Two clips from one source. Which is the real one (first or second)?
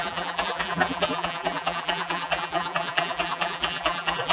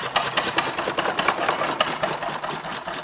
second